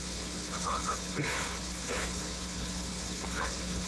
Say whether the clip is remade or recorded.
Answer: remade